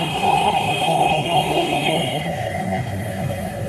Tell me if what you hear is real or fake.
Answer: fake